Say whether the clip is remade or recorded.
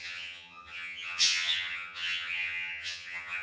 remade